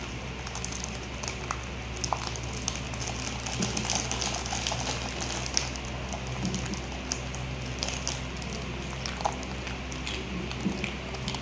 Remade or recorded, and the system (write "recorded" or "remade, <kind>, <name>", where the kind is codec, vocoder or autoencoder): recorded